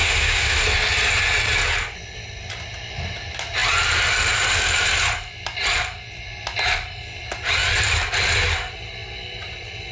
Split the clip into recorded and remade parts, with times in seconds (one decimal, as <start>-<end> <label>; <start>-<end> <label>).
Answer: 0.0-0.6 remade; 0.6-9.9 recorded